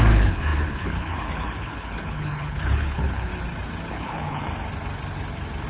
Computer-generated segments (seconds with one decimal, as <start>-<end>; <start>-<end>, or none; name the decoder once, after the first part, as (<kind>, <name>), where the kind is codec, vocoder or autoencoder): 0.0-3.3 (codec, HILCodec); 3.9-4.5